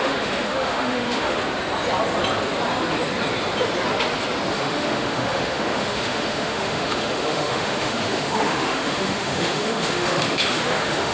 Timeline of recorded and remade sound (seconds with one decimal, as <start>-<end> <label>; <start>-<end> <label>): 0.0-1.4 remade; 1.4-4.5 recorded; 4.5-11.1 remade